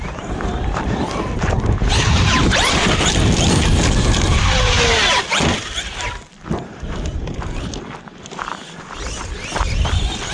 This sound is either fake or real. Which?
real